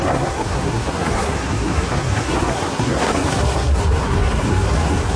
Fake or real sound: fake